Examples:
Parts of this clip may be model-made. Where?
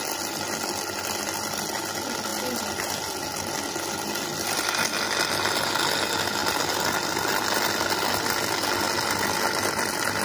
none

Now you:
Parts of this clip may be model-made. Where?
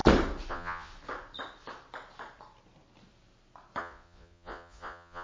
0.5-0.9 (vocoder, Vocos); 3.8-5.2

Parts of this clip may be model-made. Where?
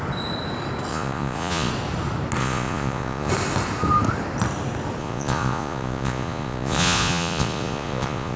0.9-1.7 (vocoder, Vocos); 2.4-3.3; 5.0-8.4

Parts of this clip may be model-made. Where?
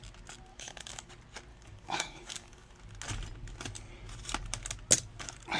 0.5-1.1 (codec, DAC); 1.5-2.7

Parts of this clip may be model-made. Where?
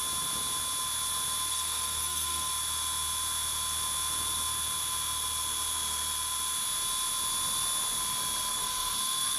1.5-2.5 (codec, SNAC); 8.5-9.4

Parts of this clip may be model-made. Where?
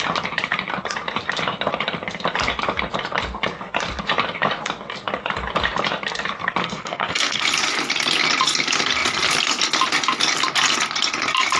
6.6-7.4 (codec, SNAC)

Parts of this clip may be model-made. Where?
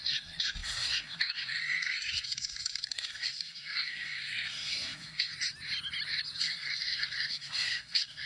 0.0-5.3 (codec, SNAC); 6.4-8.3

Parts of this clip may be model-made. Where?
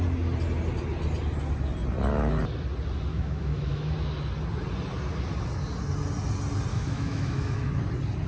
3.1-3.9 (autoencoder, DAC-VAE); 6.7-7.8